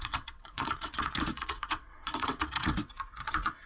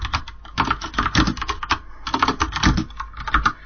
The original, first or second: second